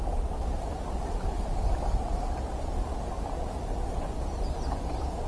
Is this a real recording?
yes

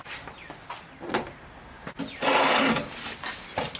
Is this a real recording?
yes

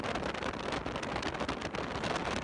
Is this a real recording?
yes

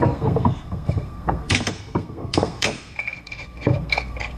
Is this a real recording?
no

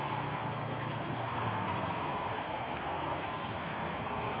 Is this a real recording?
no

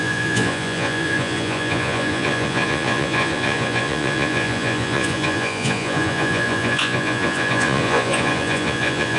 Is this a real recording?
no